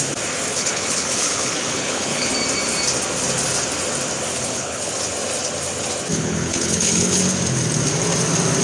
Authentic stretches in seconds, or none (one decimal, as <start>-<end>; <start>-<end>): 0.0-0.5; 2.3-4.3; 4.9-6.1; 7.2-8.6

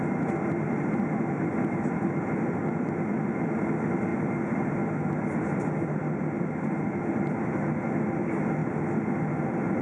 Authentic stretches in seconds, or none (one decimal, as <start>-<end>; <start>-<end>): 0.0-9.8

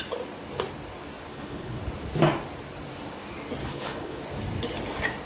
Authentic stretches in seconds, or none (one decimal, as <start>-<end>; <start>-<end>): 0.0-1.3; 1.8-3.6; 4.2-5.3